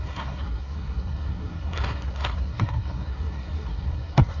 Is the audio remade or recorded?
remade